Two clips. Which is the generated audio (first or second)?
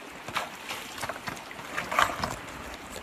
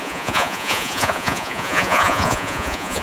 second